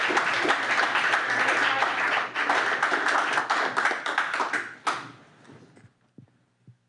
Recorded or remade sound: recorded